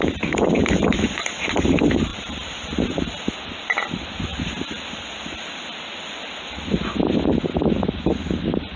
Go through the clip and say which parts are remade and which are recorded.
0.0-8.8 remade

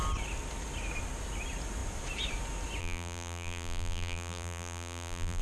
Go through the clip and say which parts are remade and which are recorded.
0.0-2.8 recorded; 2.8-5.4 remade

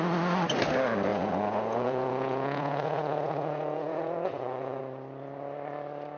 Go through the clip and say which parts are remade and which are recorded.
0.0-1.1 recorded; 1.1-4.8 remade; 4.8-6.2 recorded

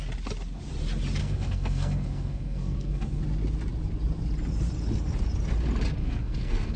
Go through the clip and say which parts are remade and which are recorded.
0.0-1.2 recorded; 1.2-3.2 remade; 3.2-6.0 recorded; 6.0-6.8 remade

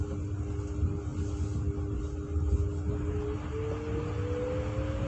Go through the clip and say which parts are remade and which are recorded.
0.0-5.1 recorded

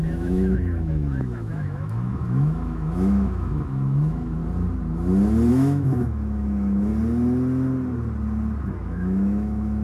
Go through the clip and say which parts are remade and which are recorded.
0.0-4.4 remade; 4.4-5.5 recorded; 5.5-6.9 remade; 6.9-8.6 recorded; 8.6-9.8 remade